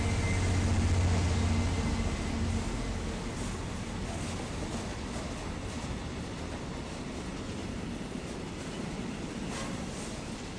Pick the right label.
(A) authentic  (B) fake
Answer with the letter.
A